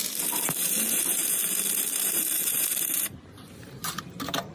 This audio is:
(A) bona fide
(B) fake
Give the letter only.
B